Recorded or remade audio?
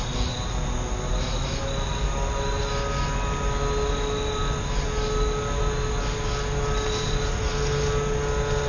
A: recorded